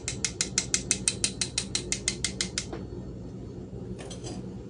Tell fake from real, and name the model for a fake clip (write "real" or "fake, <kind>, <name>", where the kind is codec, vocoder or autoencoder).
real